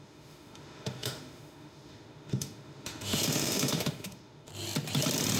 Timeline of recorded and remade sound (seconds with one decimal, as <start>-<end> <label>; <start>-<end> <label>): 0.0-4.5 remade; 4.5-5.4 recorded

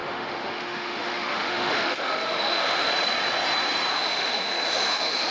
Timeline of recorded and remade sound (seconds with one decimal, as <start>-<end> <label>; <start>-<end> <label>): 0.0-2.9 remade; 2.9-3.9 recorded; 3.9-5.3 remade

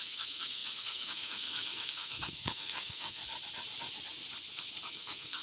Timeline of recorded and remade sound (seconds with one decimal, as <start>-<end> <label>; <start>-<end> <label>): 0.0-3.2 remade; 3.2-4.9 recorded; 4.9-5.4 remade

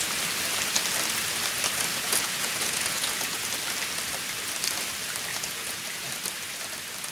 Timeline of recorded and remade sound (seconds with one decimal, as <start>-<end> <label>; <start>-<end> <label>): 0.0-1.9 recorded; 1.9-3.4 remade; 3.4-5.3 recorded; 5.3-6.0 remade; 6.0-7.1 recorded

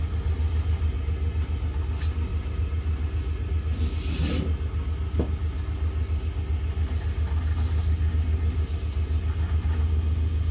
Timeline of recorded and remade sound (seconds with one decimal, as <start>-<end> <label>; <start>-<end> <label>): 0.0-2.3 recorded; 2.3-3.5 remade; 3.5-10.5 recorded

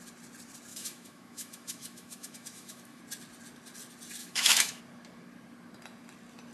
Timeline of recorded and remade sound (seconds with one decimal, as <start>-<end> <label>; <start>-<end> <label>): 0.0-0.7 recorded; 0.7-3.0 remade; 3.0-4.2 recorded; 4.2-4.8 remade; 4.8-6.5 recorded

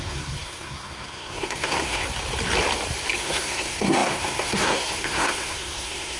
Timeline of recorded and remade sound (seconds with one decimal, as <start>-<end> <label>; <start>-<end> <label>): 0.0-2.0 remade; 2.0-3.2 recorded; 3.2-6.2 remade